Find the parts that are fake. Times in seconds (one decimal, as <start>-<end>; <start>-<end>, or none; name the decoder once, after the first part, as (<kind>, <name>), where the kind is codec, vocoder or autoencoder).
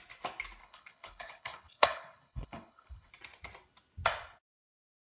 0.6-3.1 (codec, HILCodec)